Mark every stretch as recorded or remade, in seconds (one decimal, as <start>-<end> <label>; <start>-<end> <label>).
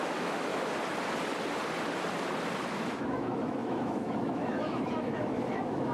0.0-0.5 remade; 0.5-2.7 recorded; 2.7-5.9 remade